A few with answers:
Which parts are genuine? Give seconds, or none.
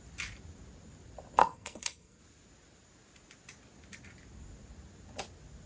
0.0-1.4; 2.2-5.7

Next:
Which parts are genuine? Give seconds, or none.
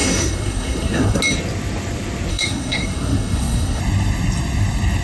1.2-2.3; 3.8-5.0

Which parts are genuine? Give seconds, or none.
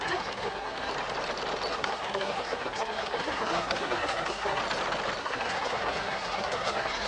0.9-1.7; 4.6-5.2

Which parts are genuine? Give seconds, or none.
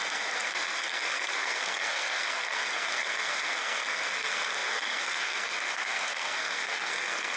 none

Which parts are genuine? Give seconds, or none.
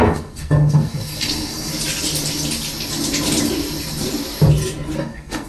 1.7-5.0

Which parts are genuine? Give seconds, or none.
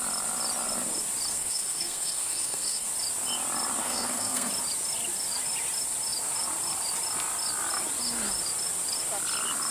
0.0-1.3; 2.9-3.8; 4.5-9.7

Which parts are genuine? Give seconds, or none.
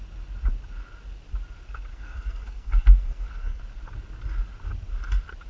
0.0-1.9; 3.6-5.5